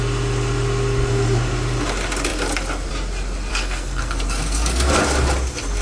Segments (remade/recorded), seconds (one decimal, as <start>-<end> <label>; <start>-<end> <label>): 0.0-3.5 recorded; 3.5-5.0 remade; 5.0-5.8 recorded